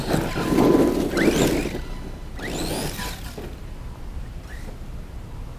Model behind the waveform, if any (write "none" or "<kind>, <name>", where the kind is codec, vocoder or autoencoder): none